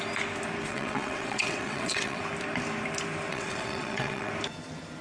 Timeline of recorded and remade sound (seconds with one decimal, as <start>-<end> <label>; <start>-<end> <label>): 0.0-0.7 recorded; 0.7-2.2 remade; 2.2-3.3 recorded; 3.3-4.3 remade; 4.3-5.0 recorded